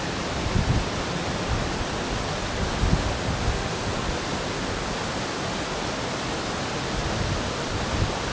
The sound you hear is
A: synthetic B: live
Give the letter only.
B